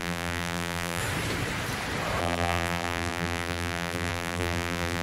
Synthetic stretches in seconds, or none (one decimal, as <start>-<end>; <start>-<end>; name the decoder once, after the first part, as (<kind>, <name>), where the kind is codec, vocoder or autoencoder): 0.0-1.0 (vocoder, BigVGAN v2); 2.2-5.0